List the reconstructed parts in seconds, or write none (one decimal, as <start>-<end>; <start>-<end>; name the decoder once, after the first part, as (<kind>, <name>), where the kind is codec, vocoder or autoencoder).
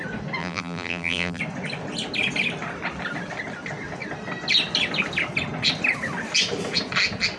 0.4-1.4 (vocoder, BigVGAN v2)